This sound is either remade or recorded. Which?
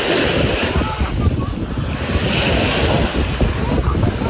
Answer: recorded